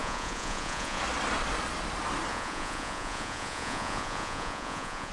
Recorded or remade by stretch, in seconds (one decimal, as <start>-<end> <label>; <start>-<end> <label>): 0.0-1.0 remade; 1.0-2.3 recorded; 2.3-5.1 remade